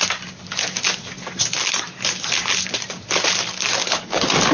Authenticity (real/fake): real